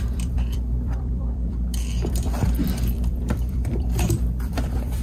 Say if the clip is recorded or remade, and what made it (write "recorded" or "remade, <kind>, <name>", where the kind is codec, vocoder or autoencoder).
remade, vocoder, BigVGAN v2